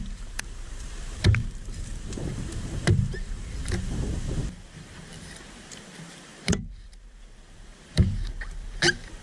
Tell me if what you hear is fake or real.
fake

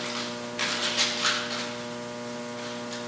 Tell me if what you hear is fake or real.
real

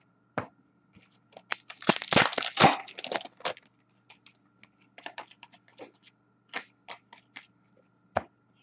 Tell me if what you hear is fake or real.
real